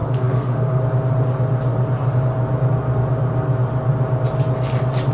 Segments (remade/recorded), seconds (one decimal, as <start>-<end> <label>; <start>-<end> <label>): 0.0-0.8 remade; 0.8-5.1 recorded

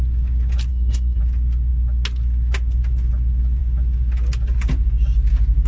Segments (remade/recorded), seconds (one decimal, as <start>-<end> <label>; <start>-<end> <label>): 0.0-0.7 recorded; 0.7-1.2 remade; 1.2-5.7 recorded

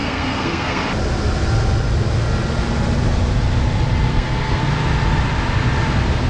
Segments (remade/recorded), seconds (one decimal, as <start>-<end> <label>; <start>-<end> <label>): 0.0-0.8 remade; 0.8-4.1 recorded; 4.1-4.7 remade; 4.7-6.3 recorded

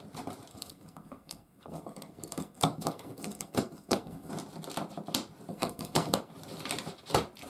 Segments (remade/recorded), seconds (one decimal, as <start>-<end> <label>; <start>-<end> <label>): 0.0-0.5 recorded; 0.5-4.3 remade; 4.3-5.5 recorded; 5.5-6.3 remade; 6.3-7.5 recorded

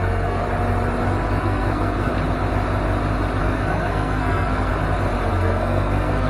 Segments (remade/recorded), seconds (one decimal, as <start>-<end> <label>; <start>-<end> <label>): 0.0-0.4 remade; 0.4-1.4 recorded; 1.4-2.1 remade; 2.1-3.4 recorded; 3.4-4.7 remade; 4.7-5.3 recorded; 5.3-6.3 remade

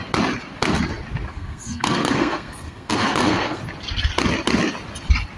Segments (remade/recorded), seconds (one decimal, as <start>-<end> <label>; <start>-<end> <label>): 0.0-1.3 recorded; 1.3-3.6 remade; 3.6-5.4 recorded

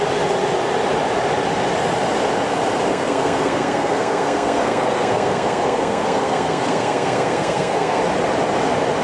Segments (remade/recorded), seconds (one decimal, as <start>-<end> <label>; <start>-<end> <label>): 0.0-2.9 recorded; 2.9-8.0 remade; 8.0-9.0 recorded

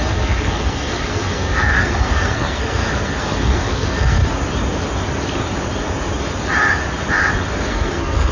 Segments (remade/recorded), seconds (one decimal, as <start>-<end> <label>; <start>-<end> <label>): 0.0-4.2 remade; 4.2-7.7 recorded; 7.7-8.3 remade